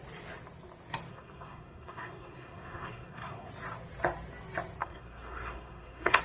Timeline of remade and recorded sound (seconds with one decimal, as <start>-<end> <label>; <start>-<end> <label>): 0.0-1.1 recorded; 1.1-3.5 remade; 3.5-4.8 recorded; 4.8-6.2 remade